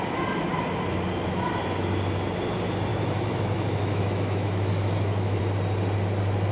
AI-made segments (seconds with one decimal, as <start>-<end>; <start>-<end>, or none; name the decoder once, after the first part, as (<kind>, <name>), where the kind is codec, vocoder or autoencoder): 2.9-5.4 (autoencoder, DAC-VAE)